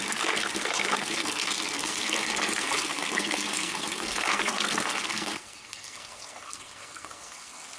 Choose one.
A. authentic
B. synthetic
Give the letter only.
B